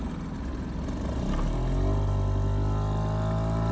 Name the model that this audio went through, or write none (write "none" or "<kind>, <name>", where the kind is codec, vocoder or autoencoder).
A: none